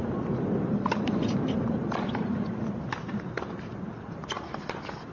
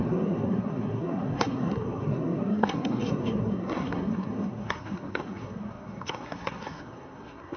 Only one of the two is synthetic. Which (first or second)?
second